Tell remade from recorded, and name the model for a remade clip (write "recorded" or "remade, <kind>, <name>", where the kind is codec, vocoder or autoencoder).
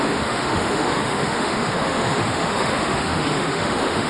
remade, autoencoder, DAC-VAE